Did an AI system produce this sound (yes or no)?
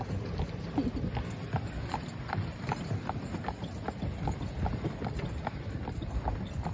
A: no